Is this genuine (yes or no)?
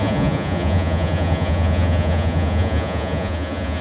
no